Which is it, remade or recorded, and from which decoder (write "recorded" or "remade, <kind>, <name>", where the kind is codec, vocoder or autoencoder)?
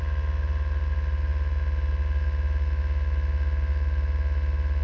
recorded